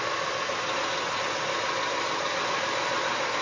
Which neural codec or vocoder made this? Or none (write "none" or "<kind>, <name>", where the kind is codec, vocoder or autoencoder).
none